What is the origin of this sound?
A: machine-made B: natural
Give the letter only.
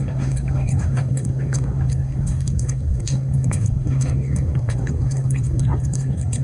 A